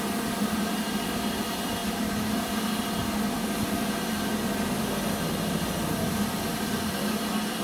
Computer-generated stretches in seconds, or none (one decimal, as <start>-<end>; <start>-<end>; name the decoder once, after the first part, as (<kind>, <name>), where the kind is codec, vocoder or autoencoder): none